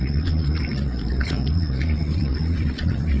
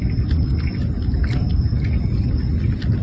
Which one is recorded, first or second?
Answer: second